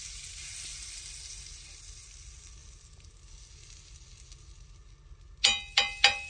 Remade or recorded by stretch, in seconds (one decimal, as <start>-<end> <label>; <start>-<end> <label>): 0.0-6.3 recorded